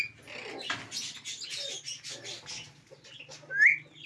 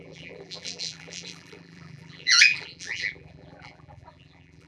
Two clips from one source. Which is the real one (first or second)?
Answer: first